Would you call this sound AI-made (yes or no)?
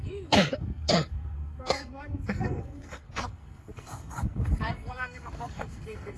yes